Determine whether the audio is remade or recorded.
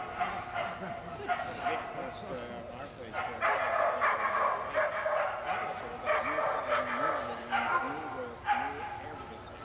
recorded